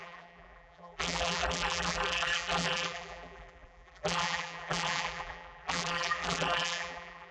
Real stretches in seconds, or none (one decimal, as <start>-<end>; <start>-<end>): none